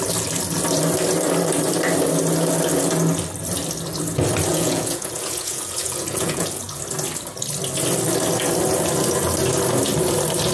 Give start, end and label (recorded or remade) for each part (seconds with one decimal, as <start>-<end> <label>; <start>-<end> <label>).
0.0-4.5 recorded; 4.5-6.8 remade; 6.8-10.5 recorded